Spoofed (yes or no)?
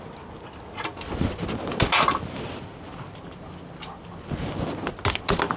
no